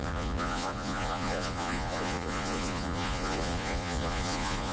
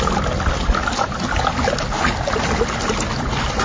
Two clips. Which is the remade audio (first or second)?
first